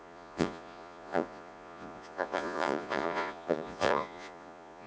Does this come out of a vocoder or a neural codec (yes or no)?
yes